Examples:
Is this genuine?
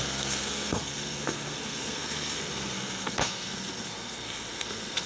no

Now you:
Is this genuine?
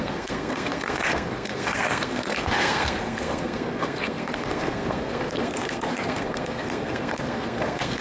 no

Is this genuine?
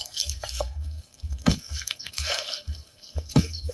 no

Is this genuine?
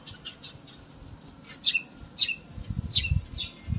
yes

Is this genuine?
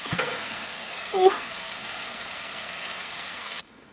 no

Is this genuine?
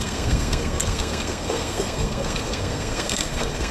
no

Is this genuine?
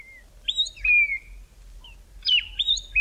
yes